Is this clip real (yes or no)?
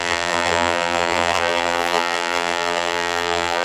no